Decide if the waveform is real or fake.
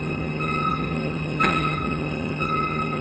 fake